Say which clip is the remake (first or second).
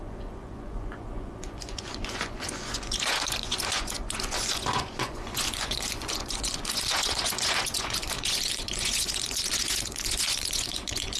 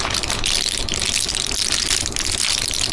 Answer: first